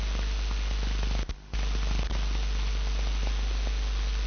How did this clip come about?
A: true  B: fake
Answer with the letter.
A